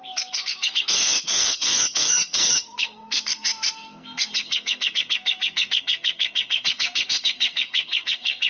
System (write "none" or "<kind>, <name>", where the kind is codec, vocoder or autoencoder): codec, SNAC